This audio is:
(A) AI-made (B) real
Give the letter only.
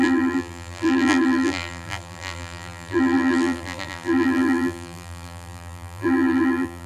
A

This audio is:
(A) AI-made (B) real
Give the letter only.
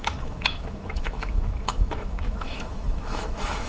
A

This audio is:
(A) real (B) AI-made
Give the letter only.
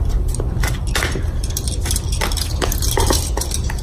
A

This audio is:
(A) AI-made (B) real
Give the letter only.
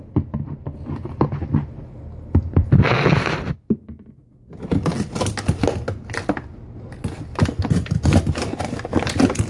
B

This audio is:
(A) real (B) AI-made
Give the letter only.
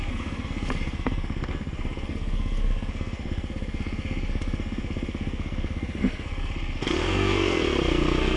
B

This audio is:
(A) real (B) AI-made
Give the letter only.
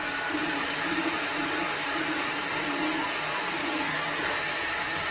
A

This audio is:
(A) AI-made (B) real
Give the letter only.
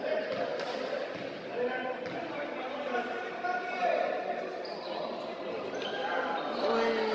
B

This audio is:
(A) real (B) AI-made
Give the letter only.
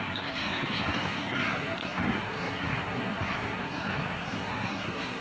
B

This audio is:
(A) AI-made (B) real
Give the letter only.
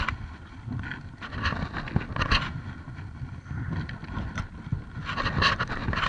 B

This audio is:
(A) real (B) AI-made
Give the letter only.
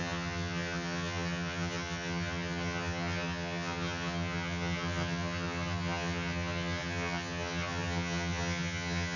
B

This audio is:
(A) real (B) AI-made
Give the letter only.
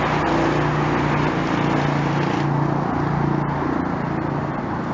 A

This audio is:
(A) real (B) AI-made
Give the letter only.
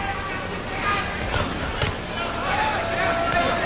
A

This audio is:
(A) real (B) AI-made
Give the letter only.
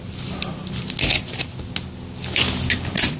A